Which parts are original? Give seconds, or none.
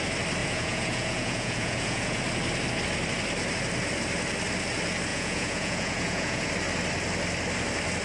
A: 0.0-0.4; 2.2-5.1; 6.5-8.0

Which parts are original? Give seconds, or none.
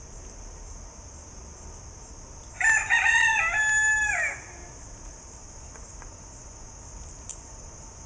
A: 0.0-2.8; 3.4-5.4; 6.8-7.3